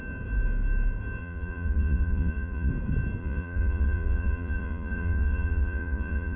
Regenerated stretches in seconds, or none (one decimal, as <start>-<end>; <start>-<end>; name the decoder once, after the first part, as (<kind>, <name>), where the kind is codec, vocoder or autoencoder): 1.2-2.7 (vocoder, Vocos); 3.2-6.4